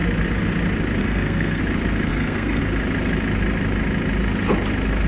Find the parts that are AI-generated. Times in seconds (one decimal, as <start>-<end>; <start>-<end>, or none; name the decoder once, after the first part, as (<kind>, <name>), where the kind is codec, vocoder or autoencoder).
1.0-1.6 (codec, SNAC); 2.1-2.6